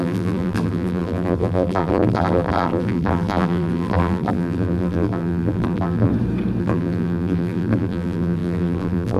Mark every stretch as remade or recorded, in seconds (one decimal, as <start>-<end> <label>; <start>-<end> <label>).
0.0-6.1 remade; 6.1-6.6 recorded; 6.6-9.2 remade